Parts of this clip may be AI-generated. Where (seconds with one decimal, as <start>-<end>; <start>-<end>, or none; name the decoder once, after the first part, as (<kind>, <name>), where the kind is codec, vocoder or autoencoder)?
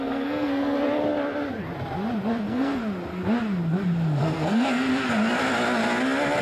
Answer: 0.0-0.5 (codec, SNAC); 2.4-2.8; 4.2-4.9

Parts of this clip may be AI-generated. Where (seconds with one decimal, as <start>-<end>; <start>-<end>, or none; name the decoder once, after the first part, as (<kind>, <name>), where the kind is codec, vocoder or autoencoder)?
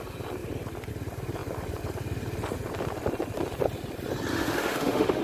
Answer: 4.3-5.2 (autoencoder, DAC-VAE)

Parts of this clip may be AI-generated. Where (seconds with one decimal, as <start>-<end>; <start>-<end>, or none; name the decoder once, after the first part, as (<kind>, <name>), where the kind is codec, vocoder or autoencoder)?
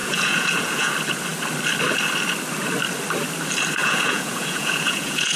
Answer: 0.0-0.9 (vocoder, Vocos); 3.8-5.4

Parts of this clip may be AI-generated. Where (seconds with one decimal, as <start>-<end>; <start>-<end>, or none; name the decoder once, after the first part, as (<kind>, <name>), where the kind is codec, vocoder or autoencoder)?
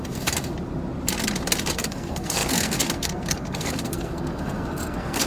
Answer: 0.0-0.5 (codec, SNAC); 1.7-5.3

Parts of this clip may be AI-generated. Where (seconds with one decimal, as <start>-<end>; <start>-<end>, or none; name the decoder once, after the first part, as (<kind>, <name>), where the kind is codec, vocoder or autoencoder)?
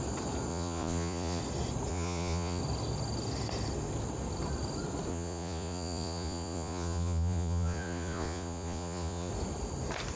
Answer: 0.5-1.4 (vocoder, Vocos); 1.9-2.6; 5.1-9.3